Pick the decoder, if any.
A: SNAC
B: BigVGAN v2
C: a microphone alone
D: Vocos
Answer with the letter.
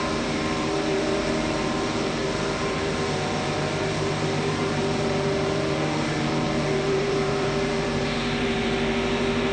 B